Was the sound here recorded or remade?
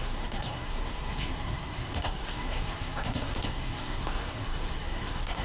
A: remade